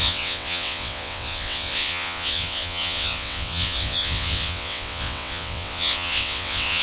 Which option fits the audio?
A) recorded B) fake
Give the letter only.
B